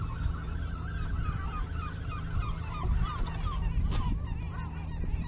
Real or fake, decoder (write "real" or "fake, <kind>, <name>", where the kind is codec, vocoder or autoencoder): real